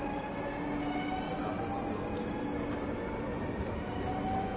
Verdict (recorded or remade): recorded